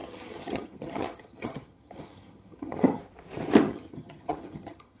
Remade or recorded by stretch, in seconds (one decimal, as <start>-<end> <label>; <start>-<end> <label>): 0.0-3.0 remade; 3.0-3.6 recorded; 3.6-5.0 remade